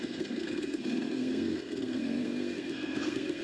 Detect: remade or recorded remade